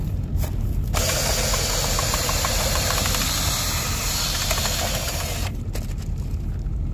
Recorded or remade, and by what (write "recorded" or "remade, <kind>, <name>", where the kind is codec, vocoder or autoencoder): recorded